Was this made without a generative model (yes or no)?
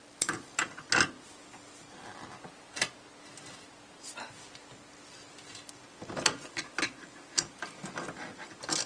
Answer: yes